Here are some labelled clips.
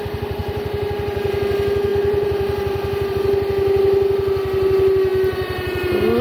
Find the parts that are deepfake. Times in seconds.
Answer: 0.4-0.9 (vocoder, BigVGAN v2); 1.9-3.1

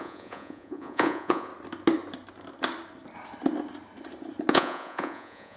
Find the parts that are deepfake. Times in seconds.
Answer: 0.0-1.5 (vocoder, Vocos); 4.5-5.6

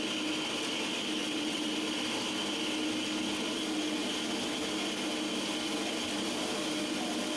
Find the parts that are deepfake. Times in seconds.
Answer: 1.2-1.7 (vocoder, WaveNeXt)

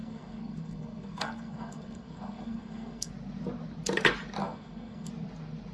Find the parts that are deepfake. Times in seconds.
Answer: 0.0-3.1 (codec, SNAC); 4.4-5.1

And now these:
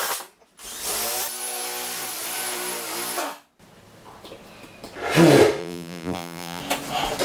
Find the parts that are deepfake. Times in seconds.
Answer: 5.6-6.6 (vocoder, BigVGAN v2)